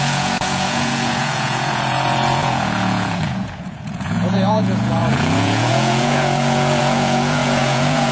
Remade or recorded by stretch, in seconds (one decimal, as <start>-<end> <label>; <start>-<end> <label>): 0.0-8.1 remade